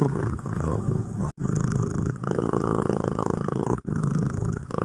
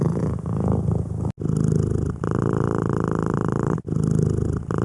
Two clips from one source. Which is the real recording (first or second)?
second